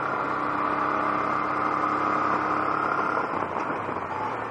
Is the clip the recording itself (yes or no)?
yes